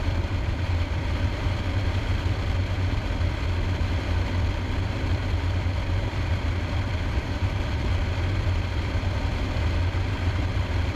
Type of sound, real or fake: fake